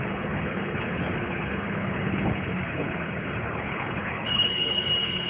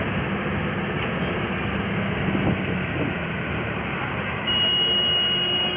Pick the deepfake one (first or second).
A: first